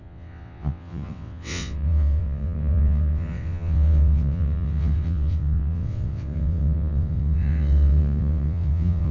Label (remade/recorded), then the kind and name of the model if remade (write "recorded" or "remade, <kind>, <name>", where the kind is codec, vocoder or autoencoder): remade, vocoder, WaveNeXt